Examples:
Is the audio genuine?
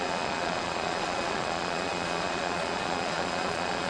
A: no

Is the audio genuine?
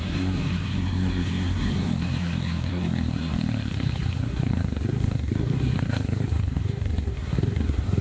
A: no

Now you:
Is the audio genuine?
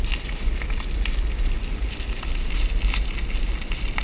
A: yes